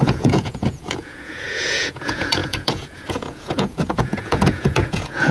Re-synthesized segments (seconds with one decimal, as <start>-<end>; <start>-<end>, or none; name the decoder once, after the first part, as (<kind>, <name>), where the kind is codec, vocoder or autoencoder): 0.0-5.3 (vocoder, Vocos)